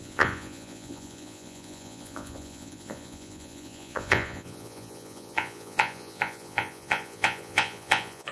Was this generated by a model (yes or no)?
yes